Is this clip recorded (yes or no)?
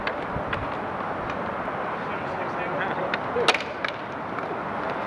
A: yes